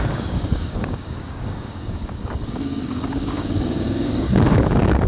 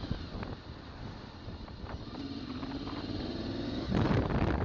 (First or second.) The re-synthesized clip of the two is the first